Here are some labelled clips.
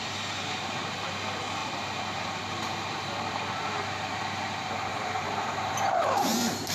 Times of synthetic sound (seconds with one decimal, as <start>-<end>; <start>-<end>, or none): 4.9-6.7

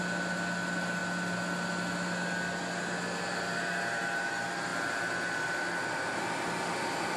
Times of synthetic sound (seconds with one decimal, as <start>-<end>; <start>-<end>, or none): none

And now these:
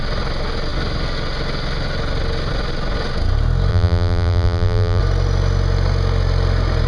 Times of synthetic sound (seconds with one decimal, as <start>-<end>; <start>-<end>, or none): 3.7-5.0

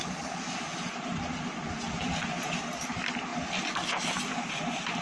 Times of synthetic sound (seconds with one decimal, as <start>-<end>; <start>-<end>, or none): none

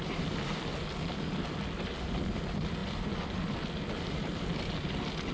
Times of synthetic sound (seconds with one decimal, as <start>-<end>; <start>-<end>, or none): none

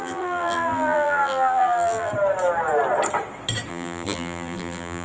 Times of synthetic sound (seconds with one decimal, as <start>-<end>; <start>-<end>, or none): 0.0-2.1; 3.7-5.0

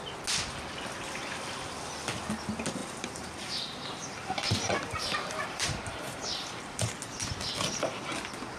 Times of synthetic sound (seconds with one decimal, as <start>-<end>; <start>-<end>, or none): 2.8-6.9

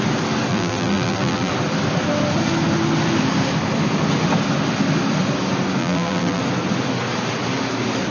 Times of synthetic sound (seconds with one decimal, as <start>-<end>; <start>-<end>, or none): 0.5-1.5; 5.8-6.4